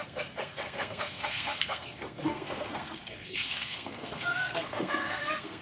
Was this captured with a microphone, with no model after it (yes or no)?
no